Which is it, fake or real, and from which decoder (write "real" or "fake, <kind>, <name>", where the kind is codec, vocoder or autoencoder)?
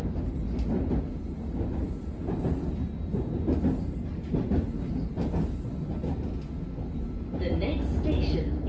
real